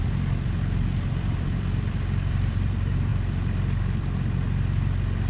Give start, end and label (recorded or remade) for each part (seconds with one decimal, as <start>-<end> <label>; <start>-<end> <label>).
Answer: 0.0-3.1 remade; 3.1-5.3 recorded